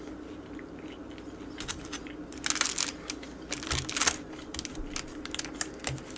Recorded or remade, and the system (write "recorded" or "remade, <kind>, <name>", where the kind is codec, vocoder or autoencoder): recorded